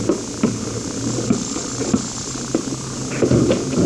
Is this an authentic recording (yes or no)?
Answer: yes